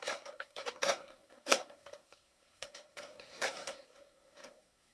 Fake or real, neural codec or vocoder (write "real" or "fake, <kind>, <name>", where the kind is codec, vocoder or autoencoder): fake, codec, SNAC